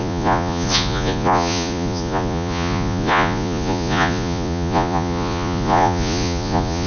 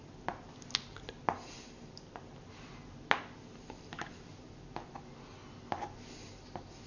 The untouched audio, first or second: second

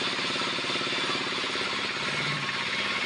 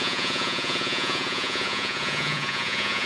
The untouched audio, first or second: first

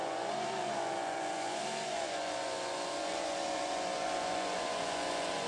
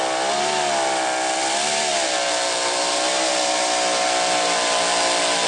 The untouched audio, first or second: second